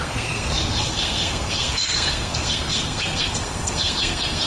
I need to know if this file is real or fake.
fake